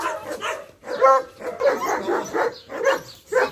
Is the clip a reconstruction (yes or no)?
no